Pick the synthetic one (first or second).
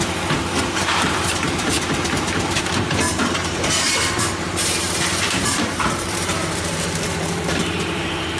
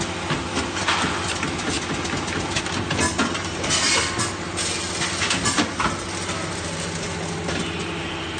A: first